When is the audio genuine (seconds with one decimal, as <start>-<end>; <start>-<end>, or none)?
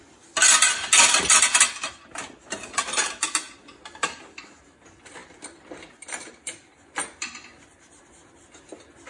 0.0-9.1